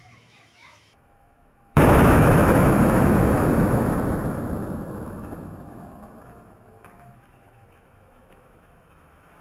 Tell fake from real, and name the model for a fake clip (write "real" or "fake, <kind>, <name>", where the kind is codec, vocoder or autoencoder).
fake, autoencoder, DAC-VAE